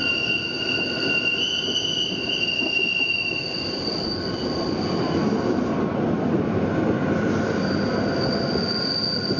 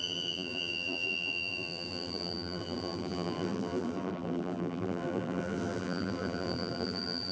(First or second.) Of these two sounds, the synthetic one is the second